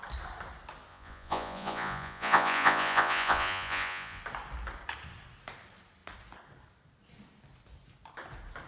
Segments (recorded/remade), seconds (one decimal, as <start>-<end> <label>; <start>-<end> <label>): 0.0-0.9 recorded; 0.9-4.2 remade; 4.2-8.7 recorded